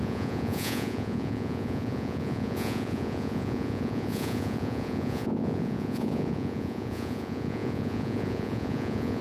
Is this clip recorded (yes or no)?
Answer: no